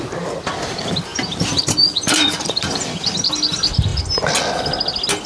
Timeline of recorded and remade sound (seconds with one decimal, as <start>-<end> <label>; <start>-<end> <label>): 0.0-1.1 recorded; 1.1-3.3 remade; 3.3-5.3 recorded